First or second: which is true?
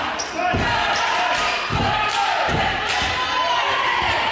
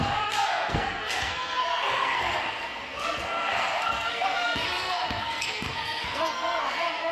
first